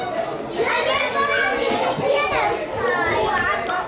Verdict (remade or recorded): recorded